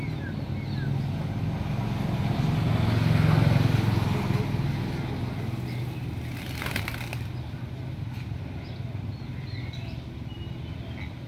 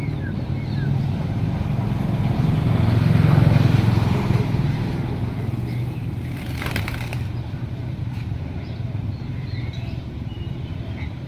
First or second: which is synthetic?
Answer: second